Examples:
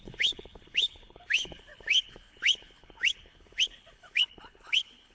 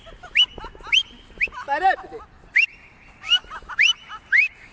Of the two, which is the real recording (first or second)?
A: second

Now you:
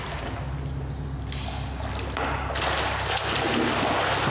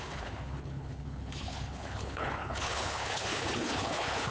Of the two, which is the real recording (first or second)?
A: first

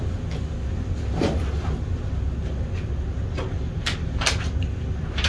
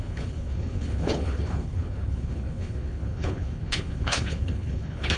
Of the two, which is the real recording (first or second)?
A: first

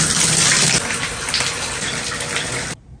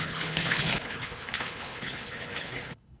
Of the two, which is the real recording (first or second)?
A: first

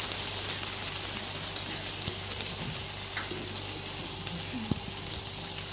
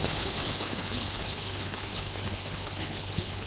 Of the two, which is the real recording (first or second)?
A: first